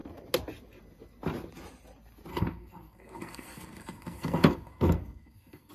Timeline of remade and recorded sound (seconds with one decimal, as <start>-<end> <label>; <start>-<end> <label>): 0.0-2.3 recorded; 2.3-5.7 remade